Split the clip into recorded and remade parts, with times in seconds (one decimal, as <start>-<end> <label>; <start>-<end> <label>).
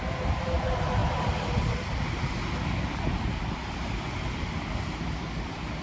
0.0-5.8 recorded